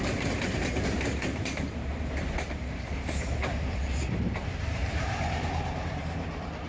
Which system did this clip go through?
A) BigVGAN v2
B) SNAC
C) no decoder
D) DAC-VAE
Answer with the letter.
A